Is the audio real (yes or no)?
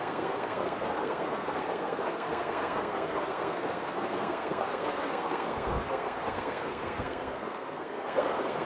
no